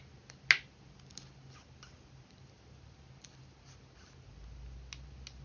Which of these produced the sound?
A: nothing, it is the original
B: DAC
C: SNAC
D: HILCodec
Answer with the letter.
A